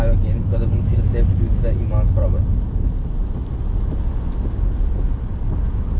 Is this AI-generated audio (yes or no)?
no